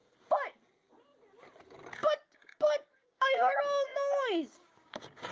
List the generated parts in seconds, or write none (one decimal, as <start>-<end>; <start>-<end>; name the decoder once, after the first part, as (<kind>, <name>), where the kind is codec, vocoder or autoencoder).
2.0-5.3 (codec, DAC)